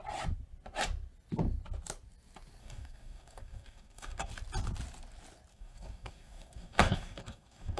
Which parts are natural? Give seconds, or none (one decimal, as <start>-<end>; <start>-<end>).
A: 0.0-2.6; 4.3-5.5